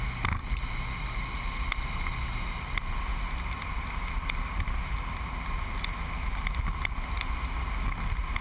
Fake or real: real